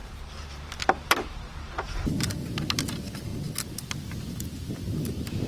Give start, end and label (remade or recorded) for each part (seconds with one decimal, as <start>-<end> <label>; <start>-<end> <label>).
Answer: 0.0-3.3 remade; 3.3-4.6 recorded; 4.6-5.5 remade